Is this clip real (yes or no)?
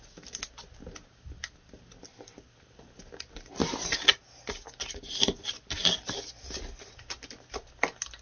yes